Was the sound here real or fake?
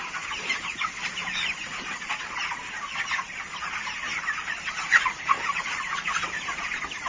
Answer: real